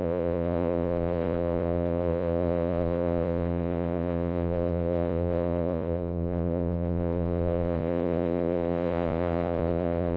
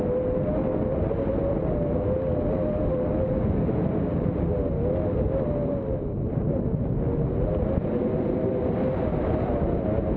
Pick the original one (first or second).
second